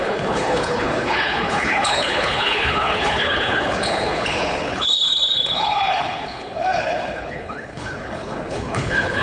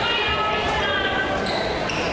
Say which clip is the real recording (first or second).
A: second